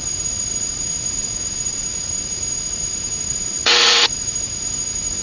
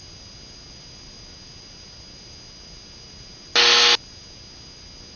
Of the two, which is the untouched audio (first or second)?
second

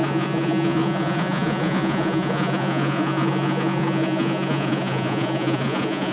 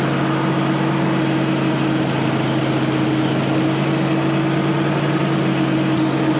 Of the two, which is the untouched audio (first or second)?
second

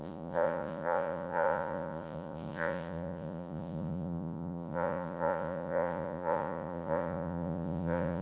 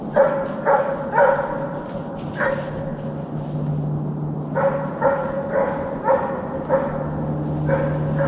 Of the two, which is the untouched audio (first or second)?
second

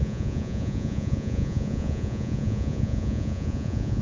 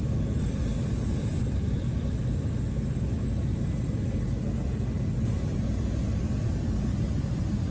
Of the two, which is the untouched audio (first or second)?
second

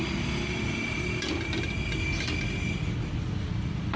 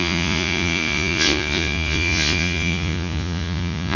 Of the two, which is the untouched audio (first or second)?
first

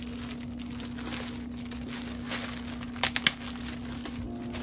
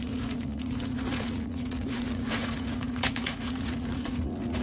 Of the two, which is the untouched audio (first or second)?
first